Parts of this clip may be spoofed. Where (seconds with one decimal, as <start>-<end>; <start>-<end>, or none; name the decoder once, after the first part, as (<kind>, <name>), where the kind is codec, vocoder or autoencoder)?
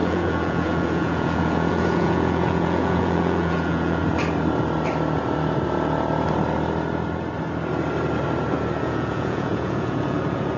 0.0-4.0 (vocoder, Vocos); 8.8-10.6